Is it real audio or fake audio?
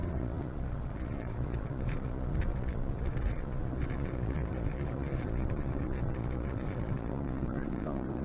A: fake